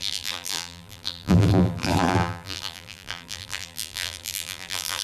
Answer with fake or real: fake